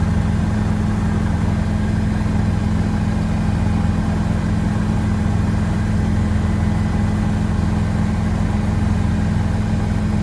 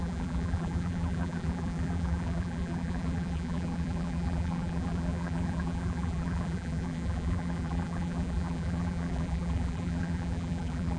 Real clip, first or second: first